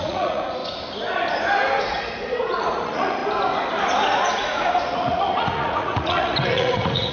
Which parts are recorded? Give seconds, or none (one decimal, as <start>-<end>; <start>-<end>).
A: 0.6-1.8; 3.2-4.1